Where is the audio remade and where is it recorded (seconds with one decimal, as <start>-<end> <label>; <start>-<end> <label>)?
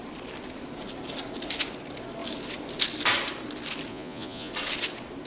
0.0-3.9 recorded; 3.9-4.5 remade; 4.5-5.3 recorded